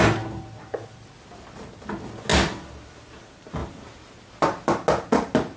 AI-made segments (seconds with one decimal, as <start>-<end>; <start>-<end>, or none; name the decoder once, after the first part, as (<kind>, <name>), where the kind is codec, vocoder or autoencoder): 3.6-4.7 (vocoder, BigVGAN v2)